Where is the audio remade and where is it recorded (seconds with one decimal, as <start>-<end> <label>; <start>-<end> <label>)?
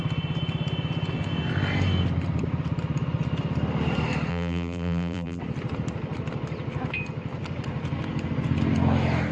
0.0-4.3 recorded; 4.3-5.4 remade; 5.4-9.3 recorded